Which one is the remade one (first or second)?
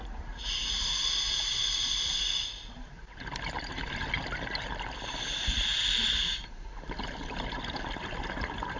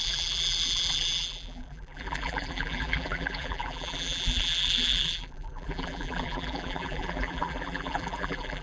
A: second